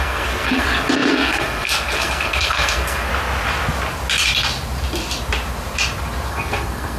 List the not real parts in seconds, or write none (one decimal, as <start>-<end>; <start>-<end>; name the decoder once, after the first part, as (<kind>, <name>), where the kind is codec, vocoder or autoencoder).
0.0-3.1 (codec, SNAC); 6.3-7.0